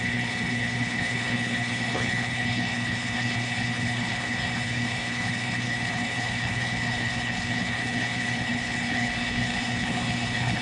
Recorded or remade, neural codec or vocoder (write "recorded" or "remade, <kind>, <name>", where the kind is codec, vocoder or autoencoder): remade, codec, HILCodec